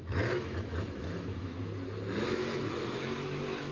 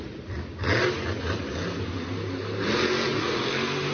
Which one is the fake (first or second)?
first